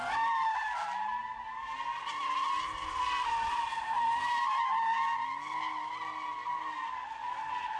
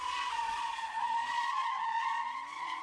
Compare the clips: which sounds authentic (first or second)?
first